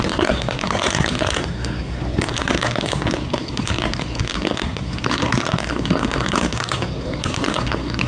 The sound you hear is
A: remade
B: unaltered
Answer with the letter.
A